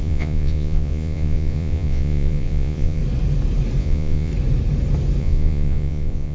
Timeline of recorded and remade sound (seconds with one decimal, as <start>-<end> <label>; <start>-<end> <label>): 0.0-3.0 remade; 3.0-3.8 recorded; 3.8-4.3 remade; 4.3-5.2 recorded; 5.2-6.3 remade